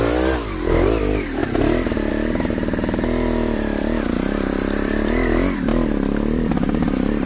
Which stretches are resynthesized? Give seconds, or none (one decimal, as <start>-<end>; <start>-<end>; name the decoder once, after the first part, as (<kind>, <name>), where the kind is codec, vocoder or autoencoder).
0.0-1.4 (vocoder, BigVGAN v2); 2.1-7.3